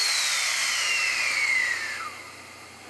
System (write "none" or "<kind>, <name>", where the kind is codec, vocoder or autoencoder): none